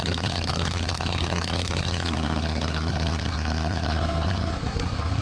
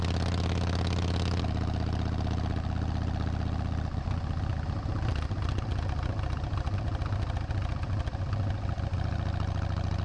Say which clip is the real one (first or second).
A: second